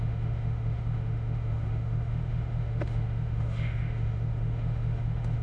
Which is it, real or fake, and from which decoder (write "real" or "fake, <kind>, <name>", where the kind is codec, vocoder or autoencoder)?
fake, autoencoder, DAC-VAE